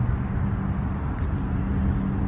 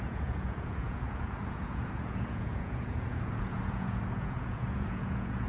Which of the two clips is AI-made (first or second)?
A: second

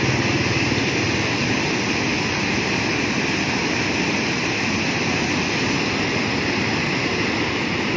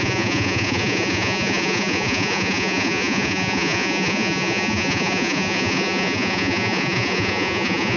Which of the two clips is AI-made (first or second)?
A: second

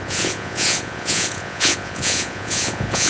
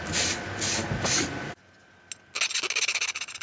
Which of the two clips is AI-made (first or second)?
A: first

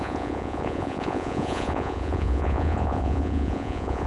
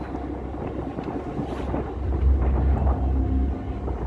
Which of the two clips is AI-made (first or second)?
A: first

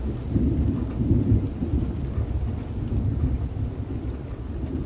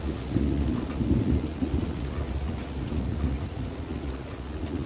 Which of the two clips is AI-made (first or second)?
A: second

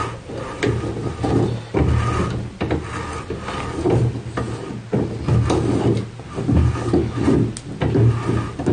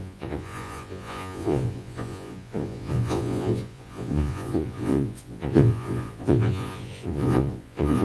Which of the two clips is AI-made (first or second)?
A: second